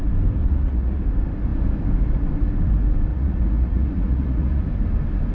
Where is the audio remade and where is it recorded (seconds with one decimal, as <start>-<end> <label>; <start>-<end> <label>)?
0.0-0.4 recorded; 0.4-1.0 remade; 1.0-3.1 recorded; 3.1-4.6 remade; 4.6-5.3 recorded